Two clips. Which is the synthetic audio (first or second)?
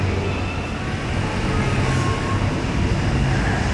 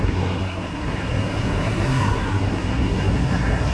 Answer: second